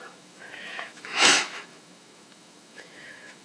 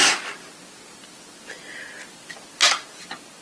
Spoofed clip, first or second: first